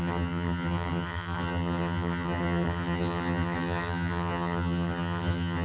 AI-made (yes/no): yes